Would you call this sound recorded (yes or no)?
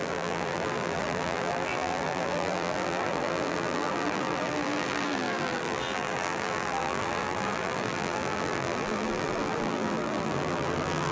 no